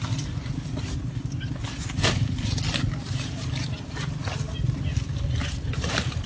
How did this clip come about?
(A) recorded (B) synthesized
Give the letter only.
A